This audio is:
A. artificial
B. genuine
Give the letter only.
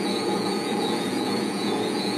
A